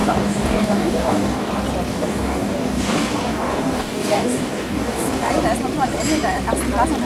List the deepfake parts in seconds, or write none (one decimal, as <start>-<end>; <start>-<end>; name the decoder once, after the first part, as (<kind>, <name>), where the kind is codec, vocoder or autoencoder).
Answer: 0.0-1.5 (codec, DAC); 1.9-5.3